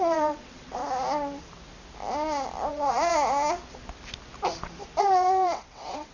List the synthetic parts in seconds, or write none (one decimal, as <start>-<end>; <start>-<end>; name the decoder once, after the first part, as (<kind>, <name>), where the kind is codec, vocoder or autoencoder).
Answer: 0.0-0.8 (vocoder, WaveNeXt); 2.7-3.1; 5.0-6.1